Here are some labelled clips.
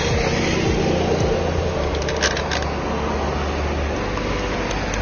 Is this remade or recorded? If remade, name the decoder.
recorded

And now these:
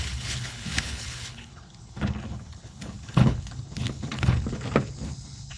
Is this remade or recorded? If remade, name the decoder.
remade, codec, HILCodec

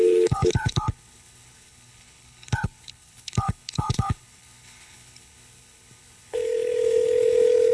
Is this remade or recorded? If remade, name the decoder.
remade, codec, HILCodec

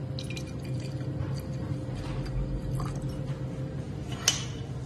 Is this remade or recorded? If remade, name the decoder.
recorded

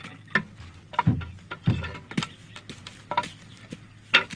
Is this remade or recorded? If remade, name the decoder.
recorded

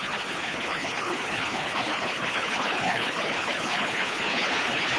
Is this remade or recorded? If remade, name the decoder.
remade, codec, HILCodec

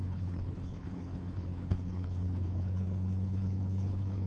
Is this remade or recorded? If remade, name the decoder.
remade, codec, HILCodec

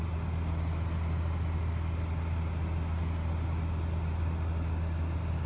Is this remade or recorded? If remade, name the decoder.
recorded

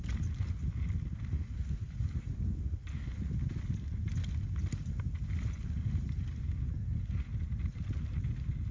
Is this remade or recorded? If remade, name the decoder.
recorded